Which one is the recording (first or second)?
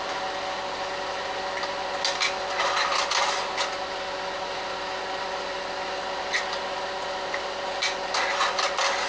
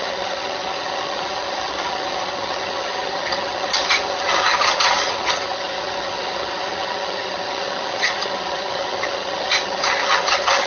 first